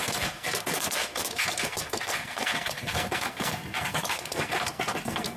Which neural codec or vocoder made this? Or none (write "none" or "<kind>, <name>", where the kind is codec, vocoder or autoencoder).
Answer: codec, SNAC